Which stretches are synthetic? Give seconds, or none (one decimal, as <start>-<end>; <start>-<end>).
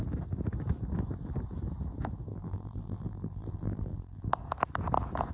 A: 2.3-4.3